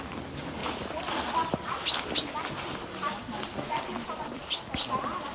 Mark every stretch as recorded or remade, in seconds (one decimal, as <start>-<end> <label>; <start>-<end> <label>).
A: 0.0-5.3 recorded